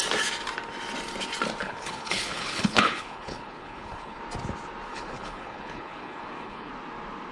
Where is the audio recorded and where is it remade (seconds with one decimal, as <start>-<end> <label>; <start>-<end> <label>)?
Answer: 0.0-1.6 recorded; 1.6-4.2 remade; 4.2-4.9 recorded; 4.9-6.7 remade; 6.7-7.3 recorded